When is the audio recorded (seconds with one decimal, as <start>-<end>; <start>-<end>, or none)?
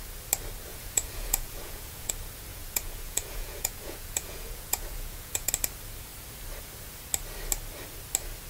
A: 0.0-0.7; 2.1-2.5; 5.5-8.5